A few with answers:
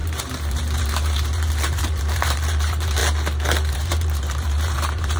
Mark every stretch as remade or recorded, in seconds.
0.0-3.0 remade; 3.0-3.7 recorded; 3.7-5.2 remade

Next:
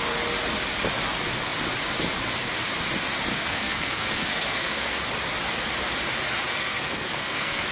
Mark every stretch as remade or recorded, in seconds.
0.0-3.3 recorded; 3.3-5.0 remade; 5.0-6.5 recorded; 6.5-7.7 remade

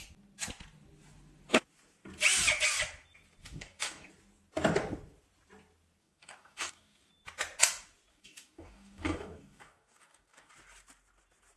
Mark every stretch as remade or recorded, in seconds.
0.0-3.4 recorded; 3.4-4.1 remade; 4.1-6.0 recorded; 6.0-7.1 remade; 7.1-8.1 recorded; 8.1-10.5 remade; 10.5-11.6 recorded

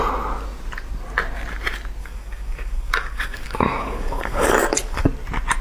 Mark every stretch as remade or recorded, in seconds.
0.0-2.0 recorded; 2.0-5.0 remade; 5.0-5.6 recorded